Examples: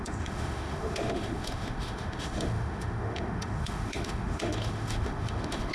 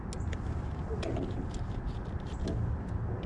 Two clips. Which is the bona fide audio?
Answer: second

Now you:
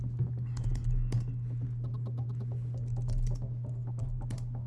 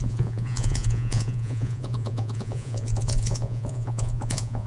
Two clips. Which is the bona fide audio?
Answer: first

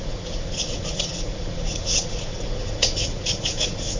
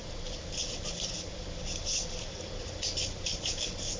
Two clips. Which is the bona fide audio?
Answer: second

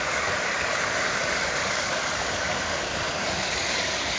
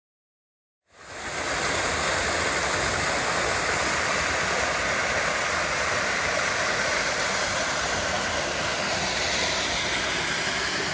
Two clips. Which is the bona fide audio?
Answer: second